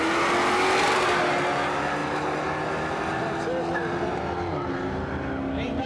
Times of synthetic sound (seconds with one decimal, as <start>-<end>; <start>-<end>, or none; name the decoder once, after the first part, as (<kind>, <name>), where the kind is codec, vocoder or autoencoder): none